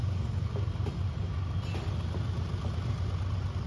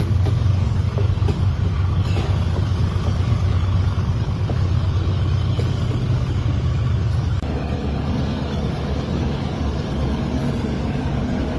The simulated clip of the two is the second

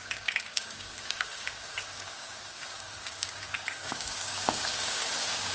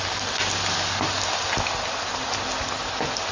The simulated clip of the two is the first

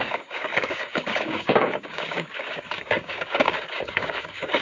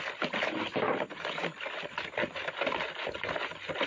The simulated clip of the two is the first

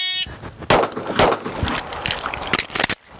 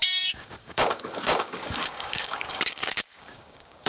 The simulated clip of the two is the second